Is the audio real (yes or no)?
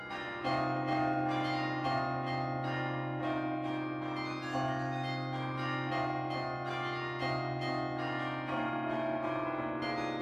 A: yes